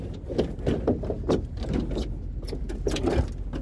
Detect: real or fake real